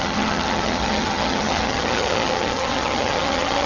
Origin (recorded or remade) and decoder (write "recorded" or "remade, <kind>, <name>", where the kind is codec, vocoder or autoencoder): remade, vocoder, HiFi-GAN